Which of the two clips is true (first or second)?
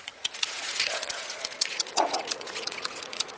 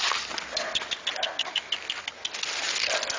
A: second